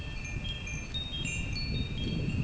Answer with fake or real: real